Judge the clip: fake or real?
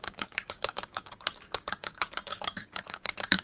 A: fake